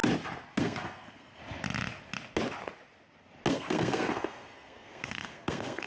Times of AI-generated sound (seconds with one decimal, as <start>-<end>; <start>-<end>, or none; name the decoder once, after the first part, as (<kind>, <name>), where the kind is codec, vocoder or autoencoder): 0.6-1.4 (codec, SNAC); 3.5-5.9

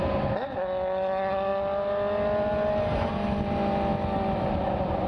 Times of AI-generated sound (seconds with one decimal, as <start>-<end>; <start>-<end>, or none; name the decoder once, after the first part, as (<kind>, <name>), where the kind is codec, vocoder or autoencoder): none

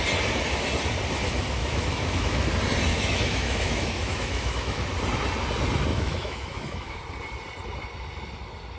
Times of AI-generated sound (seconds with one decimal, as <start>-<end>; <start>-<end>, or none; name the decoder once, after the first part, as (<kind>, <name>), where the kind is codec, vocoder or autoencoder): 1.6-2.5 (autoencoder, DAC-VAE); 2.9-4.9; 5.9-7.0

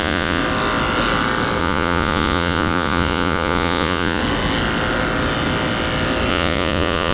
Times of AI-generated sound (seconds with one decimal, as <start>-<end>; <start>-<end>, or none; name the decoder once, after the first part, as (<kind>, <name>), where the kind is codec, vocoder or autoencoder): 0.0-0.4 (vocoder, Vocos); 1.6-4.2; 6.3-7.1

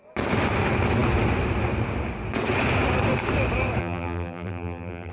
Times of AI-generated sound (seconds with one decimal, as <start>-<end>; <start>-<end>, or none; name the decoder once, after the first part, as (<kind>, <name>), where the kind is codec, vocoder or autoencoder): 3.8-5.1 (vocoder, BigVGAN v2)

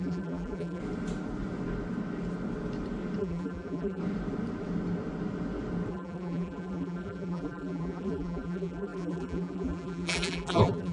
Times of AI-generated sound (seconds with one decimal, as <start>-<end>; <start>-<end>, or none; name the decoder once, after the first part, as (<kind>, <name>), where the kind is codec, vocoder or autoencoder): 0.0-0.8 (vocoder, BigVGAN v2); 3.2-4.0; 5.9-10.9